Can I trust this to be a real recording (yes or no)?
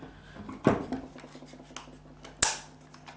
yes